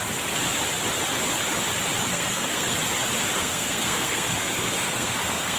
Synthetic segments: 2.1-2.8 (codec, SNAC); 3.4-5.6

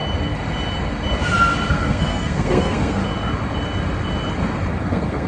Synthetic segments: 1.7-3.0 (codec, SNAC); 4.8-5.3

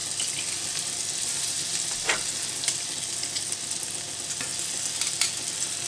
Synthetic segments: none

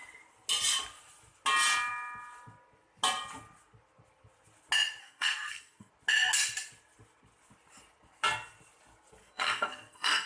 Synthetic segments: 5.0-5.9 (codec, SNAC); 9.2-10.3